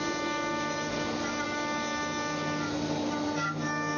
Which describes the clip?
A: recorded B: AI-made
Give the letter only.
A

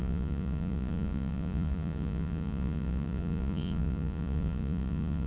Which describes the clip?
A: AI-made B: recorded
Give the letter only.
A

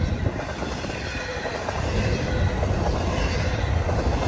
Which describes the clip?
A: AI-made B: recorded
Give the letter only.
B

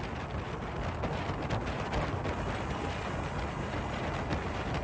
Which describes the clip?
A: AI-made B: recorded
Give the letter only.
B